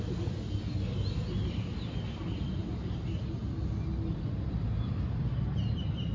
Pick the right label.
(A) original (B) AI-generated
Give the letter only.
A